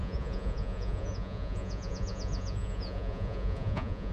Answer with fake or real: fake